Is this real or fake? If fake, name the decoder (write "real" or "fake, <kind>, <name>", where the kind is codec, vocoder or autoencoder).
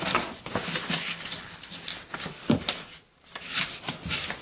real